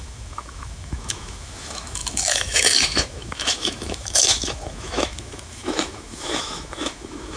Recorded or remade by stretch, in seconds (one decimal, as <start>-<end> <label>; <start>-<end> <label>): 0.0-7.4 remade